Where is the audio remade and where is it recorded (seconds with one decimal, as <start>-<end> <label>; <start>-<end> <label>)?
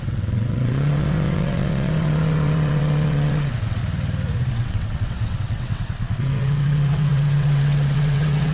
0.0-3.8 remade; 3.8-4.5 recorded; 4.5-8.5 remade